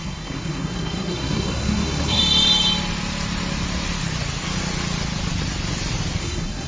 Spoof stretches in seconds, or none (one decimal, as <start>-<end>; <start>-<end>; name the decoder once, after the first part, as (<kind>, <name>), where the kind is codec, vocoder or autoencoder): 0.0-2.2 (codec, SNAC); 6.2-6.7